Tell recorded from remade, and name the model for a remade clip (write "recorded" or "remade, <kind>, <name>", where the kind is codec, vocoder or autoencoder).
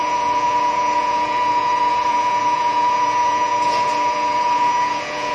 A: remade, vocoder, Vocos